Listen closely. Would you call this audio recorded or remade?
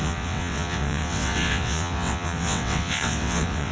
remade